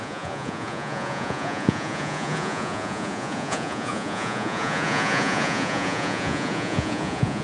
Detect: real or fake fake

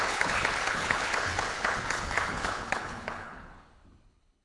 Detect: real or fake fake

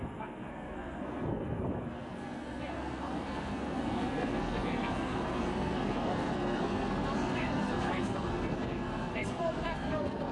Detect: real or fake fake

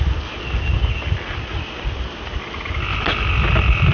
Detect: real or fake real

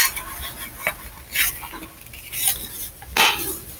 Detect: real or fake real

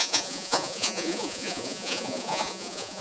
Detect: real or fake fake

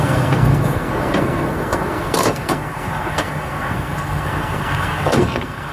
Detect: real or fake fake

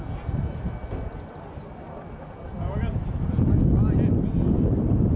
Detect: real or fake real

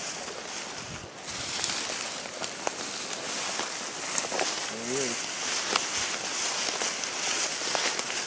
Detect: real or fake real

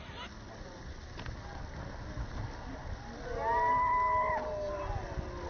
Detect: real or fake real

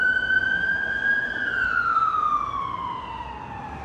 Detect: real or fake real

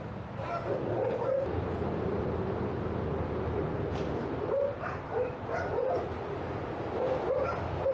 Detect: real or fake real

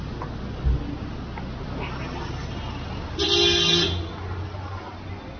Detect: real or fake real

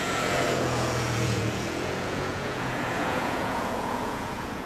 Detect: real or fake fake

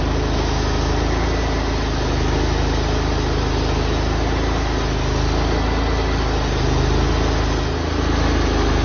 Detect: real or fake real